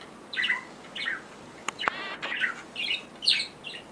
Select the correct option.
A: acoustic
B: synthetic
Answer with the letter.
A